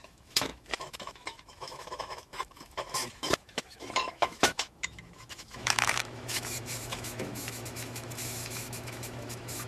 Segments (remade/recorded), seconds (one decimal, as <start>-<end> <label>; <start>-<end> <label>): 0.0-9.7 remade